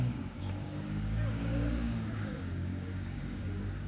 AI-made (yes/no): yes